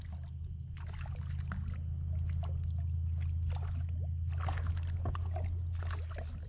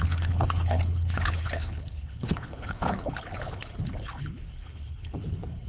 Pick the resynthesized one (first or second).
second